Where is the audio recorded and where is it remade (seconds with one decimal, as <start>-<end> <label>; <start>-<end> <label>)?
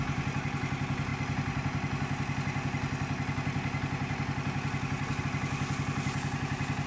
0.0-6.9 recorded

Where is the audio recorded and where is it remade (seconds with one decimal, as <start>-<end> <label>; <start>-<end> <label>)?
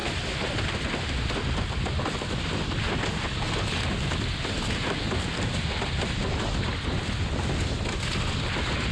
0.0-8.9 recorded